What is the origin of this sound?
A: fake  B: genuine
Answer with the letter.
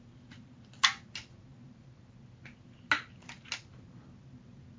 B